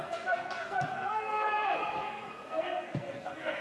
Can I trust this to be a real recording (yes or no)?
no